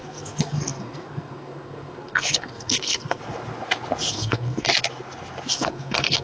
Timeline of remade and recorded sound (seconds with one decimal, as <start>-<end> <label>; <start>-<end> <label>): 0.0-3.2 remade; 3.2-4.1 recorded; 4.1-4.7 remade; 4.7-5.5 recorded; 5.5-6.2 remade